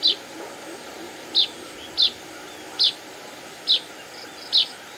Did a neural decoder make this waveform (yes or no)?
no